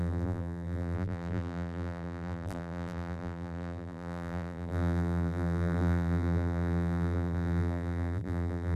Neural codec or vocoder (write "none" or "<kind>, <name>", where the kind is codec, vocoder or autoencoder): vocoder, BigVGAN v2